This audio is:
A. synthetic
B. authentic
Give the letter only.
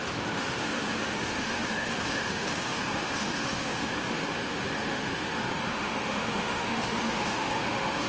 A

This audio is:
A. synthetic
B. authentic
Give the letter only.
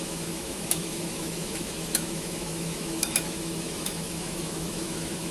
A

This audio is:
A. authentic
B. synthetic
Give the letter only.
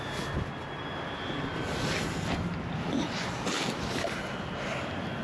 A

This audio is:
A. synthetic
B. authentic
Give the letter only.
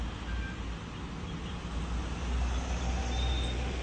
B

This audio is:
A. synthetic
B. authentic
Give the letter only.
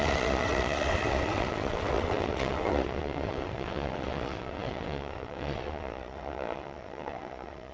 A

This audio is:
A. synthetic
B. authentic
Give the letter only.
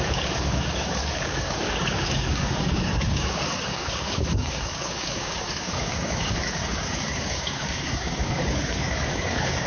A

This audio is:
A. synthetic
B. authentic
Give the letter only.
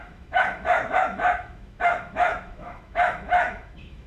A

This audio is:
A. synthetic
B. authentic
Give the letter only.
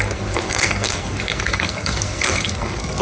A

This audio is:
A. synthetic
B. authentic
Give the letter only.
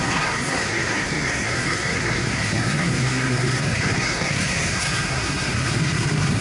A